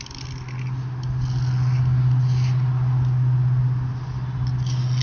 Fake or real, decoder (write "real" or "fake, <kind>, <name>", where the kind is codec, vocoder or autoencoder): real